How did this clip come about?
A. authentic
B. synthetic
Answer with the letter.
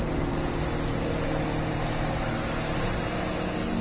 A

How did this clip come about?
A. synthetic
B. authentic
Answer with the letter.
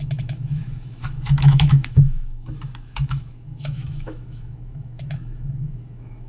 A